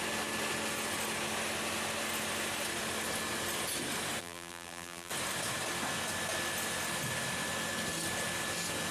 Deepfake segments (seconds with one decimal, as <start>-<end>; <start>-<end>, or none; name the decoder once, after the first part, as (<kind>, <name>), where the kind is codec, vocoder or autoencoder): 4.2-5.1 (vocoder, BigVGAN v2)